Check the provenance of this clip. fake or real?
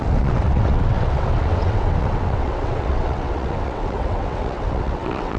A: fake